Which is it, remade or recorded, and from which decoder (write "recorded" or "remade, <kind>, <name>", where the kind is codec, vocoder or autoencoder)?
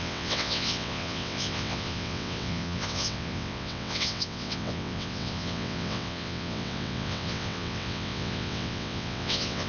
remade, vocoder, WaveNeXt